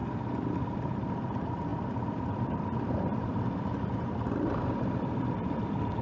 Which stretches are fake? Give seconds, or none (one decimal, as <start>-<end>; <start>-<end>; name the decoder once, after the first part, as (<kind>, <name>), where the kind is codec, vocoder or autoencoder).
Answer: 0.0-1.7 (vocoder, BigVGAN v2); 2.3-6.0